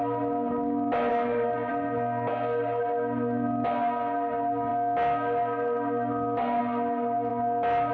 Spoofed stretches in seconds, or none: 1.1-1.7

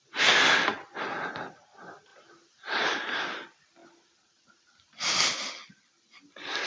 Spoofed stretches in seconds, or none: none